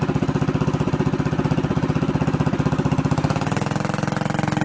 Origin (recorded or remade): recorded